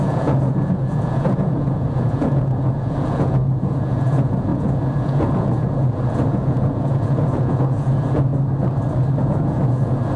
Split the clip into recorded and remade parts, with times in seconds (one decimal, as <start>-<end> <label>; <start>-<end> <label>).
0.0-8.3 remade; 8.3-9.2 recorded; 9.2-10.2 remade